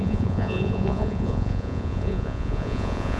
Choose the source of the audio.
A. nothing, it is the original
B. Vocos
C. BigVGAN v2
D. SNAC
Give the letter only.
B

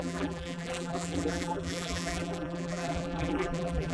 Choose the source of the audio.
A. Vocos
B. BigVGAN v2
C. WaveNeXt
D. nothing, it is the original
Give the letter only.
B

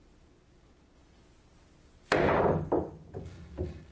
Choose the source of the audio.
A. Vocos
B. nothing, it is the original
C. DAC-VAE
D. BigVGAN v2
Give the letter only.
B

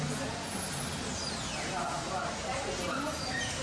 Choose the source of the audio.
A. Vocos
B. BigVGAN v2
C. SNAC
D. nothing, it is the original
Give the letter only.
D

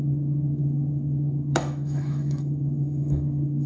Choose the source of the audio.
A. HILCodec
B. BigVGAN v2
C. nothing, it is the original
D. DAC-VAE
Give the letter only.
D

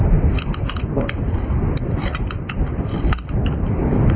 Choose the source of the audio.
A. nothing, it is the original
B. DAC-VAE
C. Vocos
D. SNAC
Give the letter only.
A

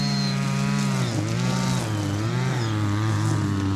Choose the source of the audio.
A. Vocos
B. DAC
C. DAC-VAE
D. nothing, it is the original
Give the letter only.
D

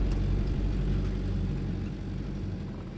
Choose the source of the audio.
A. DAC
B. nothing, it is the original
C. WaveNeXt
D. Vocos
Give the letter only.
B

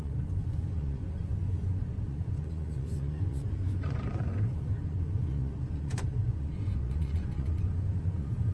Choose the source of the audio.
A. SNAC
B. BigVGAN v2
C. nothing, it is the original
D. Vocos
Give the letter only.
D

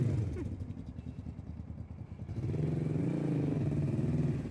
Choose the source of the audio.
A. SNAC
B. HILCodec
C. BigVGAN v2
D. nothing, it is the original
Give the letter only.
D